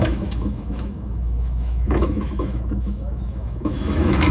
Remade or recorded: remade